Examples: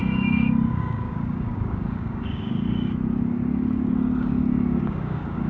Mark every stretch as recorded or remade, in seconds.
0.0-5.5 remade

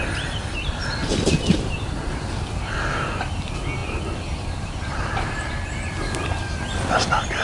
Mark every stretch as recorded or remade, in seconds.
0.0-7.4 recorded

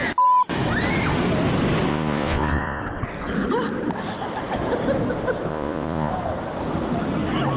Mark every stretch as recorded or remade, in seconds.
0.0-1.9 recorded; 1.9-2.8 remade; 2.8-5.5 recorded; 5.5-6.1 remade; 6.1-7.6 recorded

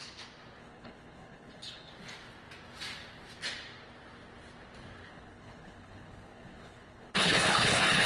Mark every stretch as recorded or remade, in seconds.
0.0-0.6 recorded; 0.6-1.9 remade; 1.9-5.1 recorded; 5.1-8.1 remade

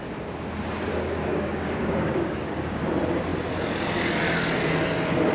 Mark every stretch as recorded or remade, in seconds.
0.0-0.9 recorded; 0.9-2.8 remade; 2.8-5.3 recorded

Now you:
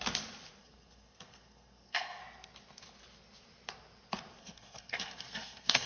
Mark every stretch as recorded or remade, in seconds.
0.0-0.6 recorded; 0.6-2.2 remade; 2.2-4.4 recorded; 4.4-5.9 remade

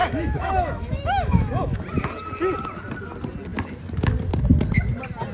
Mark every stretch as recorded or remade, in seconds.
0.0-1.8 remade; 1.8-5.3 recorded